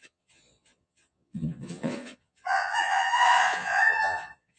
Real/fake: fake